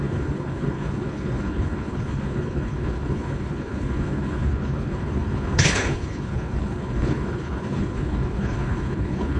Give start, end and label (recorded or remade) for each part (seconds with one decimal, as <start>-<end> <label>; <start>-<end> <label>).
0.0-9.4 remade